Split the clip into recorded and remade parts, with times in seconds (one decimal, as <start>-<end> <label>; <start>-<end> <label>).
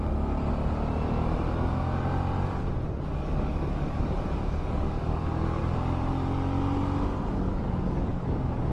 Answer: 0.0-0.5 remade; 0.5-3.1 recorded; 3.1-5.6 remade; 5.6-7.3 recorded; 7.3-8.7 remade